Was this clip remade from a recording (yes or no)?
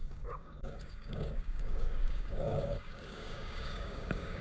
yes